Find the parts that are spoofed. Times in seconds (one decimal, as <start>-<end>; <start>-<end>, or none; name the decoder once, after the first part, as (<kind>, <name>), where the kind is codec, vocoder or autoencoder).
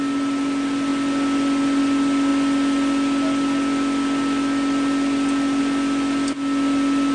none